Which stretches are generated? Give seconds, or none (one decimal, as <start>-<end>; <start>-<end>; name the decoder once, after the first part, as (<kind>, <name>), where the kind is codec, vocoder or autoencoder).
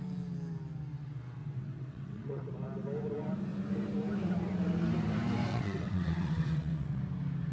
1.4-2.4 (vocoder, WaveNeXt); 5.5-7.0